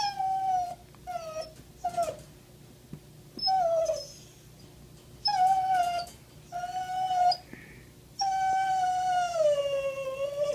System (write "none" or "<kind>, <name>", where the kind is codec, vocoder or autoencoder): none